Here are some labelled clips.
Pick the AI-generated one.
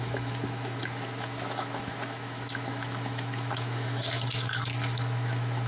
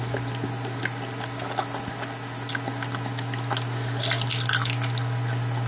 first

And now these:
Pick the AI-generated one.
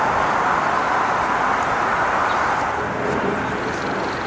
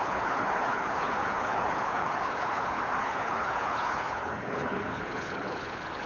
second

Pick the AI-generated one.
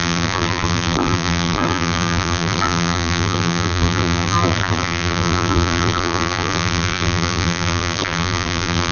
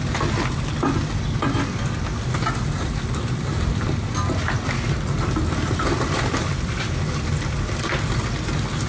first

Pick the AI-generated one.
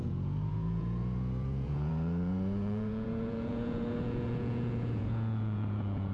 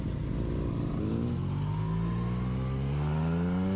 first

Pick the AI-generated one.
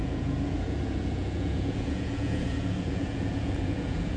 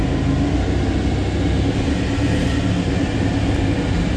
first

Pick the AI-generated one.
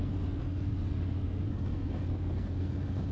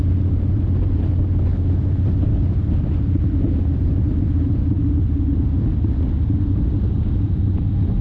first